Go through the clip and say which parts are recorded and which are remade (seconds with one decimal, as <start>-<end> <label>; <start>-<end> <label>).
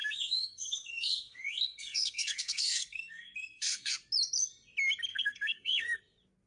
0.0-3.9 remade; 3.9-5.1 recorded; 5.1-6.0 remade; 6.0-6.5 recorded